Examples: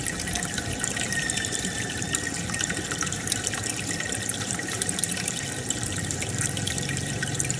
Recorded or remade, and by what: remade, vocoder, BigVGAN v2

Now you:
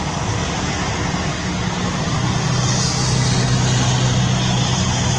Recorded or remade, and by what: recorded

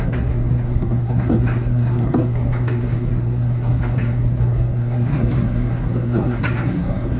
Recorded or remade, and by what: remade, codec, SNAC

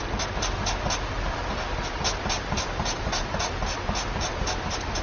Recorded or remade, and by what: recorded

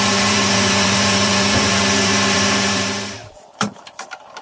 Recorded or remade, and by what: remade, vocoder, BigVGAN v2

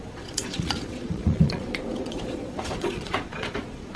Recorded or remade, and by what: remade, vocoder, Vocos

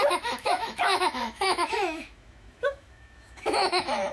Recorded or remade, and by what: remade, autoencoder, DAC-VAE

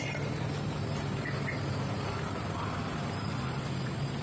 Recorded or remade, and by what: recorded